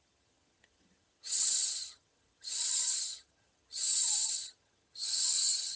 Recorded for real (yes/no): no